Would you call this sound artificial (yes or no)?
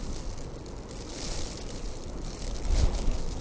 no